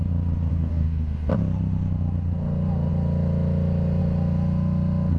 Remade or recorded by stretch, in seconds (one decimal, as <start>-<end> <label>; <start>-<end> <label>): 0.0-0.5 recorded; 0.5-1.3 remade; 1.3-5.2 recorded